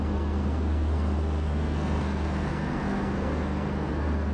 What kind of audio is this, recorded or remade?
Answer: remade